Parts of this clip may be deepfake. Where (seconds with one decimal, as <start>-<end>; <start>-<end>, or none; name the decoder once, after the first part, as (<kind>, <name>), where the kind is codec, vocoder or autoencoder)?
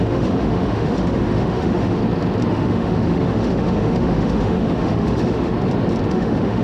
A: 0.0-2.0 (autoencoder, DAC-VAE); 2.5-5.5; 6.1-6.6